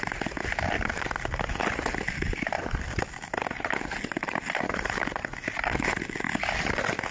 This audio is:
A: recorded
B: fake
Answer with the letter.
A